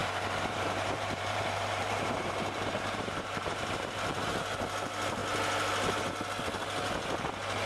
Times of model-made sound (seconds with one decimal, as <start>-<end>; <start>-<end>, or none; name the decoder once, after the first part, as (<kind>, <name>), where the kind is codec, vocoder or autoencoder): 0.0-4.3 (vocoder, BigVGAN v2)